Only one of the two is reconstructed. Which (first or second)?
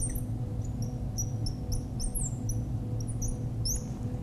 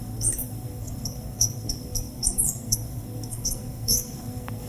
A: second